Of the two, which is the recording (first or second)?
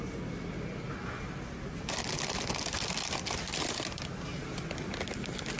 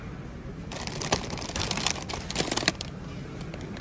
first